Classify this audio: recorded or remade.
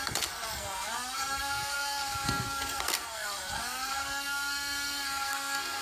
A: remade